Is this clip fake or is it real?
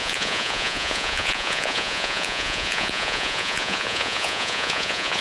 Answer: fake